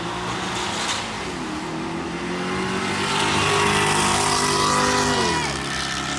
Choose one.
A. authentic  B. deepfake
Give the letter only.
A